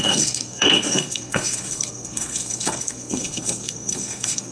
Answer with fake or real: fake